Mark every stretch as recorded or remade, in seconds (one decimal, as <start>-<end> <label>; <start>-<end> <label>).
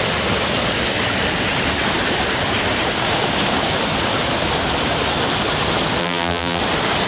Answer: 0.0-6.0 recorded; 6.0-6.6 remade; 6.6-7.1 recorded